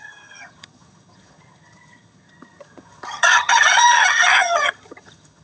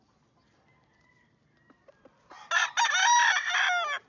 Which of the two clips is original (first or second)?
second